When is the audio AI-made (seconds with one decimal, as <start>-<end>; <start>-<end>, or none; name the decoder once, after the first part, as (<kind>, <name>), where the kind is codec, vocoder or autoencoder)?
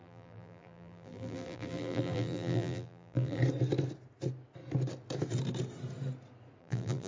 0.0-3.4 (vocoder, BigVGAN v2); 6.6-7.1